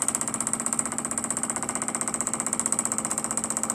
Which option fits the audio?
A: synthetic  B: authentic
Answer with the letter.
B